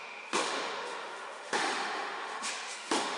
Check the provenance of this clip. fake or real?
fake